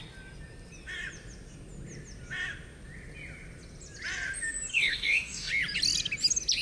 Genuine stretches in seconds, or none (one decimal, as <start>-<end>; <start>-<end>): 0.0-4.7; 5.5-6.6